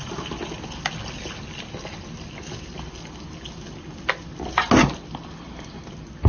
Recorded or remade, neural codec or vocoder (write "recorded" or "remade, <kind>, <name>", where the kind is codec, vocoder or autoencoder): recorded